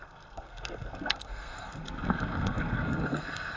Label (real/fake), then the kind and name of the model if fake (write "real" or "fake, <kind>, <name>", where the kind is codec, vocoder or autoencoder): fake, codec, SNAC